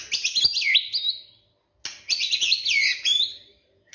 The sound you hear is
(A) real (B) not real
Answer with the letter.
A